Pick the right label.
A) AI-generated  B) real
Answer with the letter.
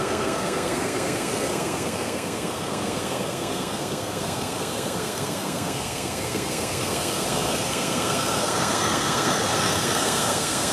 A